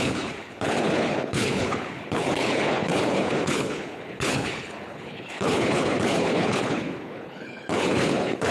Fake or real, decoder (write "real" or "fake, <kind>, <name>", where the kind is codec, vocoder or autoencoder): fake, codec, HILCodec